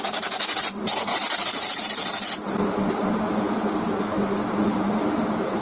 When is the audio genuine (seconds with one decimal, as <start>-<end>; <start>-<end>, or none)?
0.0-1.1; 1.8-5.6